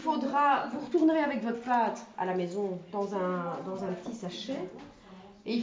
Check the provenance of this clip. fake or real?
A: real